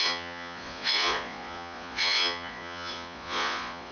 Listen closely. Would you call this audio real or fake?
fake